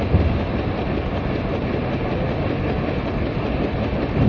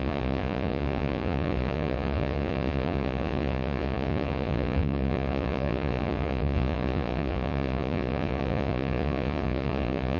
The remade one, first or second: second